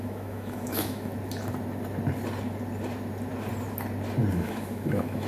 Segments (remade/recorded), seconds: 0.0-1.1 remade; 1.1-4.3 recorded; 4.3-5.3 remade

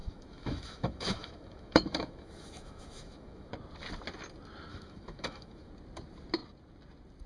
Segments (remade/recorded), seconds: 0.0-3.5 remade; 3.5-4.7 recorded; 4.7-5.7 remade; 5.7-7.3 recorded

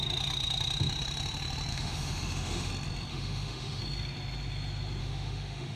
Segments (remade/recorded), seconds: 0.0-1.7 recorded; 1.7-2.7 remade; 2.7-3.1 recorded; 3.1-3.8 remade; 3.8-5.0 recorded; 5.0-5.8 remade

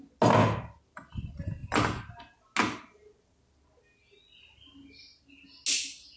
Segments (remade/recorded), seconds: 0.0-6.2 recorded

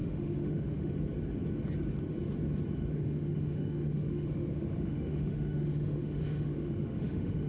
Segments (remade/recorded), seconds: 0.0-0.9 remade; 0.9-2.9 recorded; 2.9-7.5 remade

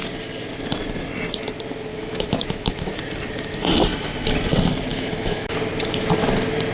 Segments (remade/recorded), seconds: 0.0-1.9 recorded; 1.9-2.9 remade; 2.9-4.9 recorded; 4.9-5.5 remade; 5.5-6.7 recorded

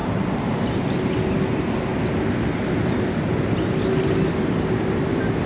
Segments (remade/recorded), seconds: 0.0-5.5 recorded

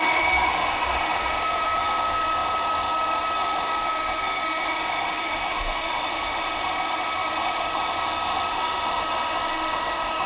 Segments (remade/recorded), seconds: 0.0-10.3 remade